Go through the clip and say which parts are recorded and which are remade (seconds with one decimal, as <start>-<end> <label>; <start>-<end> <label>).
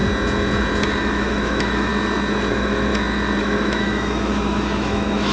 0.0-1.0 recorded; 1.0-1.9 remade; 1.9-2.5 recorded; 2.5-2.9 remade; 2.9-3.4 recorded; 3.4-5.3 remade